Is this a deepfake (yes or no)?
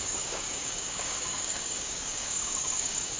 yes